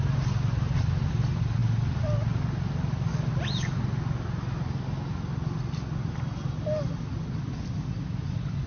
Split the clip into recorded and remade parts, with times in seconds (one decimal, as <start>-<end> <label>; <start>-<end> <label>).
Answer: 0.0-1.6 recorded; 1.6-3.8 remade; 3.8-8.7 recorded